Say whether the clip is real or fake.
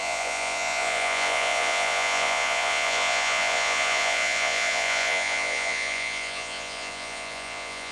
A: fake